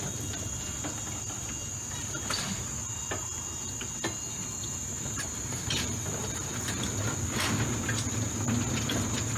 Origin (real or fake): real